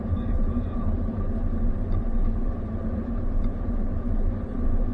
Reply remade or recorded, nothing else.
remade